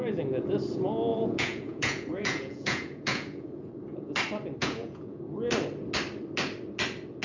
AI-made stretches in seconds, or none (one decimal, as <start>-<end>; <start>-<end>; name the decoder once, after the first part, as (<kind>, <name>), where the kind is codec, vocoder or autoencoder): 1.1-3.7 (vocoder, Vocos); 4.6-5.2